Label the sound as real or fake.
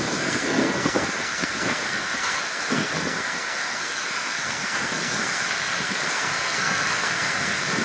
fake